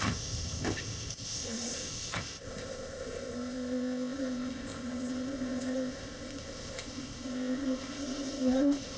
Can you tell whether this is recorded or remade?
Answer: remade